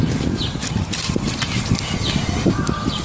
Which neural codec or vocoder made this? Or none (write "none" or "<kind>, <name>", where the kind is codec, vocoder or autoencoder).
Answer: none